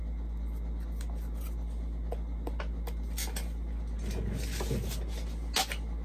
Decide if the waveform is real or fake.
real